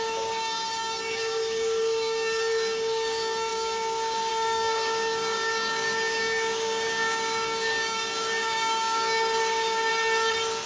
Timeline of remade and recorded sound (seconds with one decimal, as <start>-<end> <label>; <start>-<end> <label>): 0.0-9.9 remade; 9.9-10.7 recorded